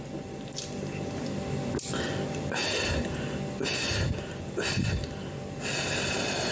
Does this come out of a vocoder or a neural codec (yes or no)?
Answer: no